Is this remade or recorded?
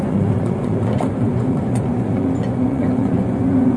remade